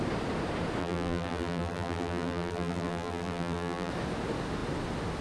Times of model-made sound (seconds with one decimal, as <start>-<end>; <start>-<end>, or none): 0.8-3.9